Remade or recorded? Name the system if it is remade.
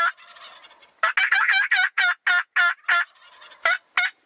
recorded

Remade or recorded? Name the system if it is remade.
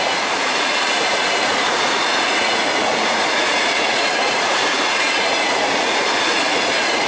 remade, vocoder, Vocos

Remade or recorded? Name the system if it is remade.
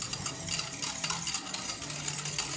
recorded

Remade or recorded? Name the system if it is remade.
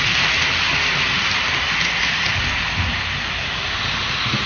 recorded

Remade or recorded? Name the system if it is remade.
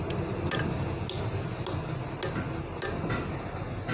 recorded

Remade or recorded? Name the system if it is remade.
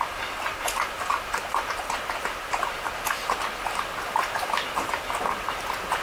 recorded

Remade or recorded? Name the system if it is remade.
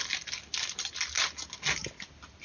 recorded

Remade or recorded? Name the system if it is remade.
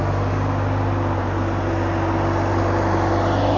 recorded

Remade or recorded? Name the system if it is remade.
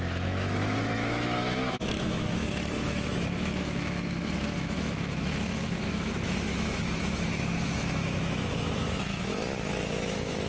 remade, autoencoder, DAC-VAE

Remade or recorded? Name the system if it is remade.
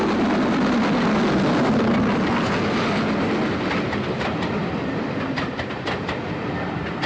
recorded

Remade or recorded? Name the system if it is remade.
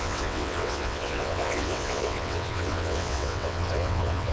remade, vocoder, WaveNeXt